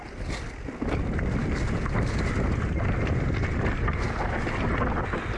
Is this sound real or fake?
real